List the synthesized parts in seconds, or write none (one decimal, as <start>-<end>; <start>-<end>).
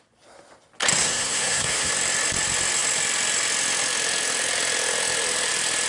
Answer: 1.0-1.9